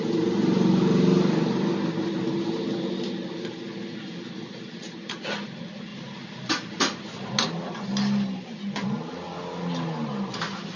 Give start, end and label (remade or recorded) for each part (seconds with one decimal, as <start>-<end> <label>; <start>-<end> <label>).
0.0-10.8 recorded